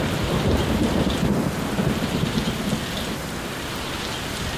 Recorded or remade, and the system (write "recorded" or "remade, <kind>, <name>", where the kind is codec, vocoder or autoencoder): recorded